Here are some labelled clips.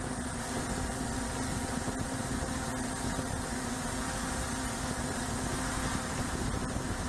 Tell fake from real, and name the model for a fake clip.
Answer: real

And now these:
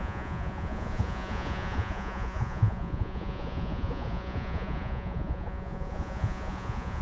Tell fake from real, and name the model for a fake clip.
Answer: fake, vocoder, Vocos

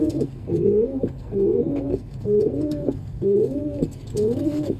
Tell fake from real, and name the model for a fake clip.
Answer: fake, codec, SNAC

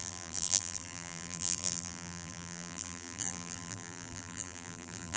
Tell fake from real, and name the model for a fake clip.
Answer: fake, vocoder, BigVGAN v2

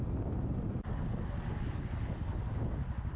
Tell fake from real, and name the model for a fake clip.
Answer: real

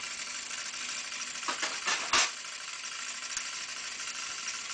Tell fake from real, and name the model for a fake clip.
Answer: real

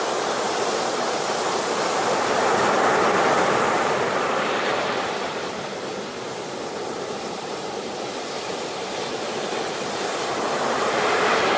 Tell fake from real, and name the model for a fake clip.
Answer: fake, vocoder, BigVGAN v2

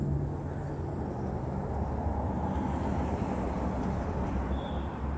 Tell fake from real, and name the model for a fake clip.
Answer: real